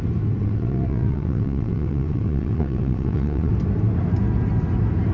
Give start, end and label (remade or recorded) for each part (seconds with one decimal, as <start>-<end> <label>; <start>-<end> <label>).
0.0-0.4 recorded; 0.4-3.5 remade; 3.5-5.1 recorded